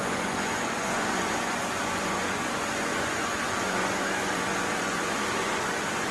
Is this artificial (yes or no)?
yes